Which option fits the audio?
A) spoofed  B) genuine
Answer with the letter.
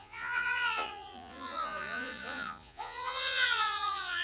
A